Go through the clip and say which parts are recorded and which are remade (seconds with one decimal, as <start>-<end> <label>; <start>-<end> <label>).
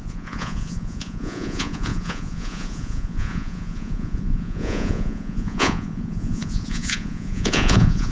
0.0-8.1 remade